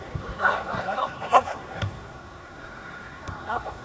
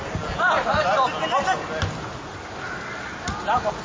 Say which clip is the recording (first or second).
second